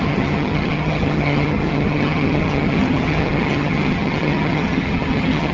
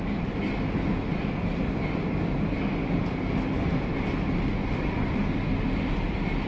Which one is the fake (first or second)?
first